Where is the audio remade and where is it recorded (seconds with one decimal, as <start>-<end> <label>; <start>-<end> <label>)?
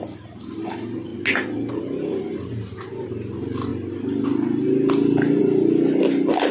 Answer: 0.0-6.5 recorded